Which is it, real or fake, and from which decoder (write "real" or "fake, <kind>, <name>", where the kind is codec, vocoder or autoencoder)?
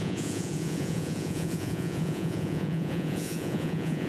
fake, vocoder, Vocos